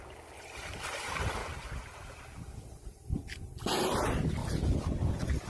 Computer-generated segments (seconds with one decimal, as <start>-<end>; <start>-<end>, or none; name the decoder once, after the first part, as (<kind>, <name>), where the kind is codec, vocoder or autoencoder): none